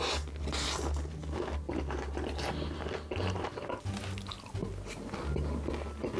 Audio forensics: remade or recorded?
recorded